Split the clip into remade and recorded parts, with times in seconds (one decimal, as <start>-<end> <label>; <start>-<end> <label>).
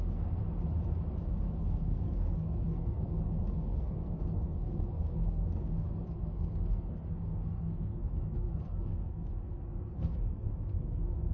0.0-0.4 remade; 0.4-1.2 recorded; 1.2-11.3 remade